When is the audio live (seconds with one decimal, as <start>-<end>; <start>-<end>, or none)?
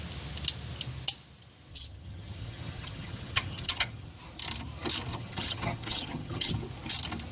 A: 0.0-1.7; 4.1-5.1; 6.5-7.3